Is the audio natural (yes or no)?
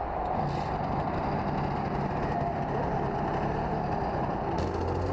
yes